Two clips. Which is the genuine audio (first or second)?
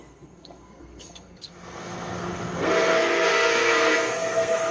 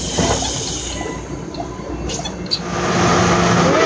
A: second